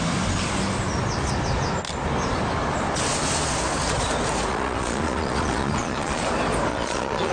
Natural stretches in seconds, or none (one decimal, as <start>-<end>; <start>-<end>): 0.0-4.5; 6.2-6.7